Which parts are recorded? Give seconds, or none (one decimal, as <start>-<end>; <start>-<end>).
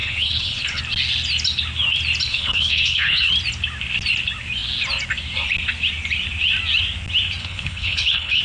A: 0.8-2.3; 3.3-7.4